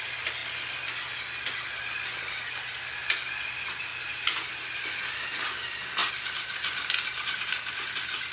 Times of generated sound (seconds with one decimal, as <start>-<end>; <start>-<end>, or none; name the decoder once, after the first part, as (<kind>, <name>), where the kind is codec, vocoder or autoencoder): none